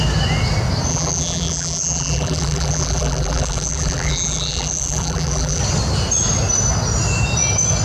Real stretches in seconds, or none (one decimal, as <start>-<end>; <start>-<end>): 0.0-0.9; 5.6-7.8